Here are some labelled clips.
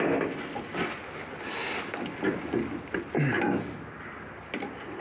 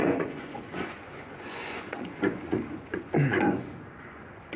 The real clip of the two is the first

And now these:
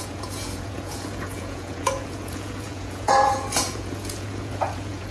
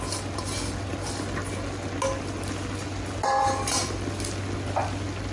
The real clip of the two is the second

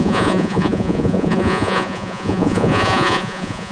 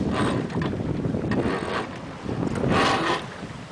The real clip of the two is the second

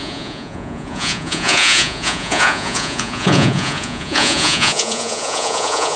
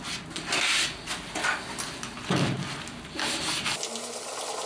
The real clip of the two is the second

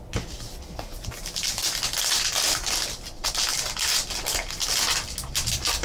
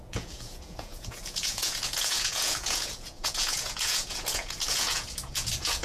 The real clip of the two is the first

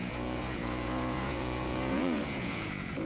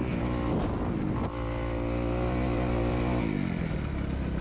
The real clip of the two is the second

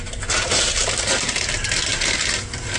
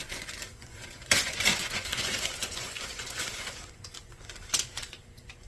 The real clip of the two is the first